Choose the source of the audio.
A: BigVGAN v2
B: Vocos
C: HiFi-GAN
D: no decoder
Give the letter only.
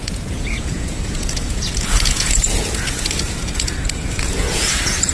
B